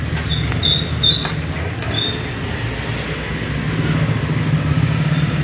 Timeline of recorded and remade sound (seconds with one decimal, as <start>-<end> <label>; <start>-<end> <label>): 0.0-5.4 recorded